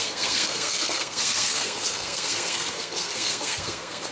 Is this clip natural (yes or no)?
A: no